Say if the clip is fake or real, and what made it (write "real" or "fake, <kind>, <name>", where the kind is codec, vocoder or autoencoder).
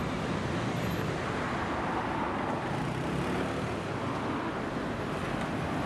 real